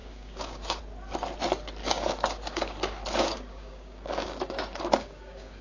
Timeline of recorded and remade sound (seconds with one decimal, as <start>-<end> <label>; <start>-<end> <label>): 0.0-0.8 remade; 0.8-1.8 recorded; 1.8-5.6 remade